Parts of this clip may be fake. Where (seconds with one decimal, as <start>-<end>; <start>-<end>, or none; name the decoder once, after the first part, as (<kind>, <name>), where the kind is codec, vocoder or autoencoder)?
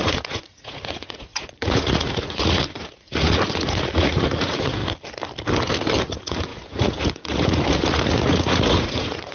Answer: 0.0-4.8 (vocoder, Vocos); 6.0-9.3